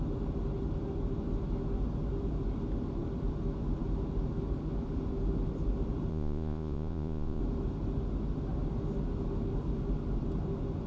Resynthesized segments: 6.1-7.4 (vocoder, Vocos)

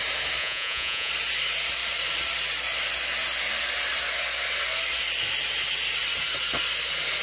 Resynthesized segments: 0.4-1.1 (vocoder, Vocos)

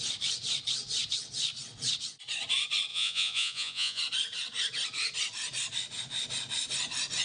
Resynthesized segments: 2.9-4.0 (vocoder, Vocos)

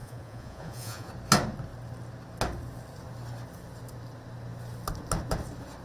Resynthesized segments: 0.0-1.1 (vocoder, Vocos)